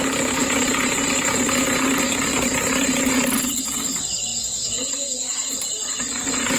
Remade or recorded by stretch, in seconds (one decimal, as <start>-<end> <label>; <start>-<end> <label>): 0.0-4.3 recorded; 4.3-5.5 remade; 5.5-6.6 recorded

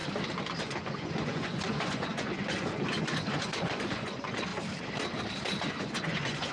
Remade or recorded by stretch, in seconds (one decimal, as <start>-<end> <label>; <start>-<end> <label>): 0.0-0.6 recorded; 0.6-4.5 remade; 4.5-5.7 recorded; 5.7-6.5 remade

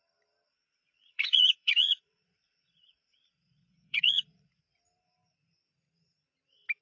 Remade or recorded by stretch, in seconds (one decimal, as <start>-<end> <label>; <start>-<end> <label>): 0.0-0.5 recorded; 0.5-4.6 remade; 4.6-6.8 recorded

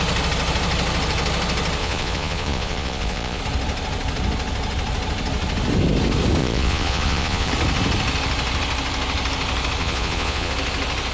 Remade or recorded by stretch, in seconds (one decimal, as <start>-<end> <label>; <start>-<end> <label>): 0.0-1.8 recorded; 1.8-3.4 remade; 3.4-6.4 recorded; 6.4-7.5 remade; 7.5-9.8 recorded; 9.8-10.5 remade; 10.5-11.1 recorded

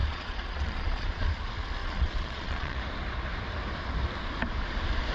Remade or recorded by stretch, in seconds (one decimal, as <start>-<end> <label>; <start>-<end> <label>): 0.0-1.3 remade; 1.3-1.8 recorded; 1.8-2.8 remade; 2.8-5.1 recorded

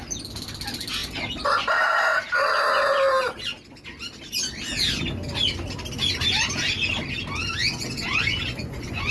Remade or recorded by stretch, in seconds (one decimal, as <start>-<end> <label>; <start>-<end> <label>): 0.0-7.6 recorded; 7.6-9.1 remade

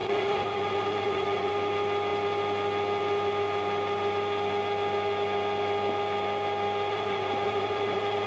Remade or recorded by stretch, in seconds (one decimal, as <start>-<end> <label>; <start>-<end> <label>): 0.0-1.5 remade; 1.5-6.9 recorded; 6.9-8.3 remade

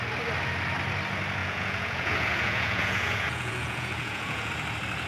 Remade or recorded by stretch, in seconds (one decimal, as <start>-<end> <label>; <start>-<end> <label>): 0.0-1.4 recorded; 1.4-4.5 remade; 4.5-5.1 recorded